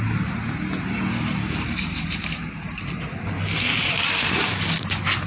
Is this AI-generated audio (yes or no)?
no